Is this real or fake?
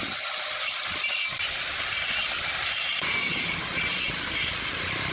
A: real